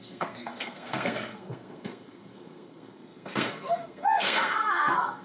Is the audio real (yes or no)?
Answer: no